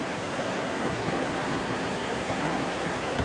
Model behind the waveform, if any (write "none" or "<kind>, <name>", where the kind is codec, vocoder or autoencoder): codec, SNAC